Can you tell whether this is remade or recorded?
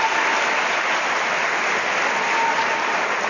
recorded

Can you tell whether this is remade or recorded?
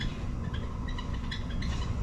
remade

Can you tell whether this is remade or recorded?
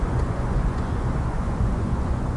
remade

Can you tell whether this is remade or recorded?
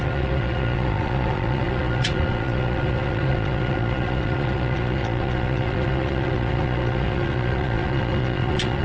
remade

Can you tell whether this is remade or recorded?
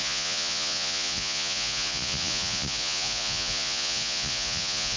remade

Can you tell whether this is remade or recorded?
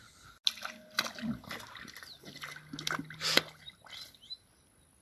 recorded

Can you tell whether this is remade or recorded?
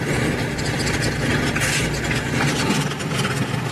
recorded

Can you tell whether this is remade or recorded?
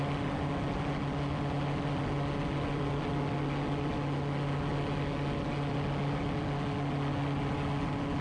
recorded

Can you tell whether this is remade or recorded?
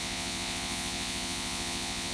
remade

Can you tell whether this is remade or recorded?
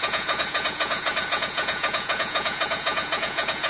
remade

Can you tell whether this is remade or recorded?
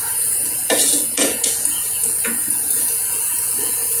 remade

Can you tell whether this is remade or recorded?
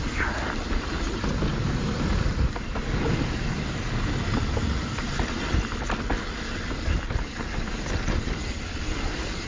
recorded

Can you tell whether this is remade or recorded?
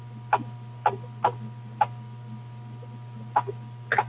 recorded